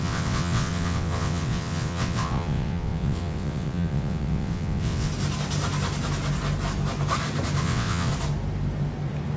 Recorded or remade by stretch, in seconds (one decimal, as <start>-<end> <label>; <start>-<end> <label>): 0.0-5.1 remade; 5.1-7.6 recorded; 7.6-8.1 remade; 8.1-9.4 recorded